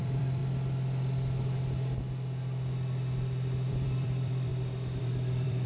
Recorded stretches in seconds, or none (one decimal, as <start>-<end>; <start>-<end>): 0.4-3.7; 4.5-5.0